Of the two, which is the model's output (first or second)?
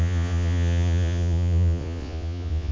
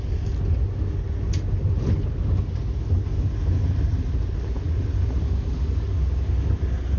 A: first